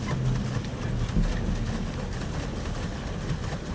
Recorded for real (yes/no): yes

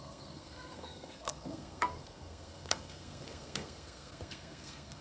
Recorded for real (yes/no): no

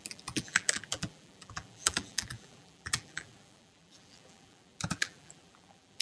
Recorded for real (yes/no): no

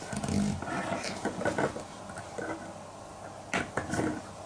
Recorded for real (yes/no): yes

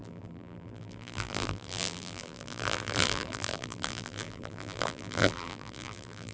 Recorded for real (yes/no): no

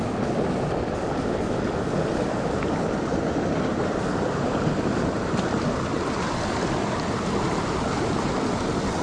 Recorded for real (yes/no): yes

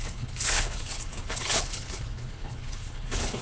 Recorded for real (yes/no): no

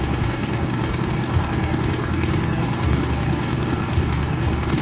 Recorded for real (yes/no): no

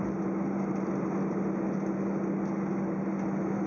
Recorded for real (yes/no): yes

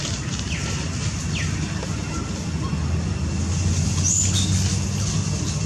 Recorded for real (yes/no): yes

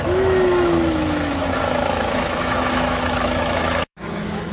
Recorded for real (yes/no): no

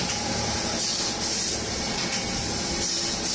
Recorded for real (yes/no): yes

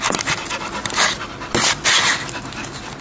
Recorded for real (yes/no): yes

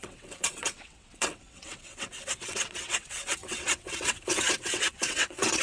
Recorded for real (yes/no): no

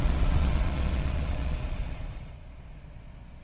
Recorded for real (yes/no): no